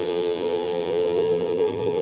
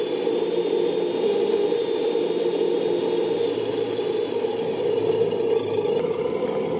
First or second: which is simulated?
first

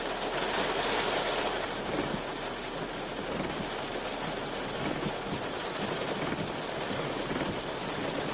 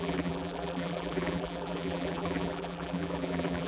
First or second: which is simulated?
second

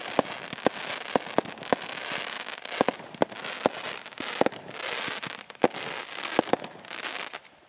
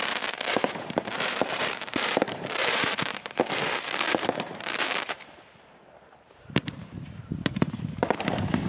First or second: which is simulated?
second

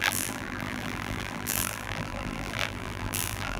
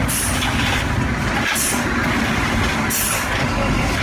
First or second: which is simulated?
first